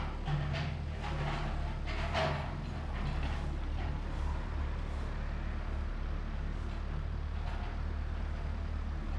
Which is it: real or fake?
real